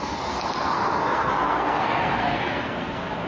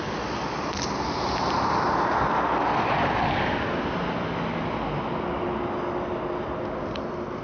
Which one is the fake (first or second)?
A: first